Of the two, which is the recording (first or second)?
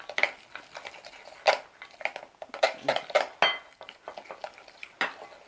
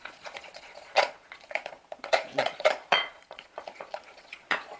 first